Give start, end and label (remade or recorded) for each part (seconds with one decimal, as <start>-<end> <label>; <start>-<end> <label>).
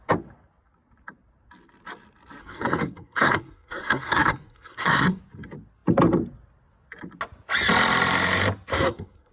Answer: 0.0-2.4 recorded; 2.4-5.2 remade; 5.2-8.7 recorded; 8.7-9.3 remade